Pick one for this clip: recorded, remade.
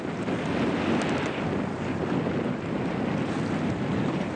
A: recorded